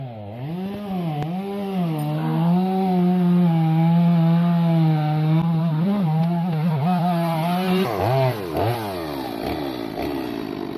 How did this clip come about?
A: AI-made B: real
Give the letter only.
B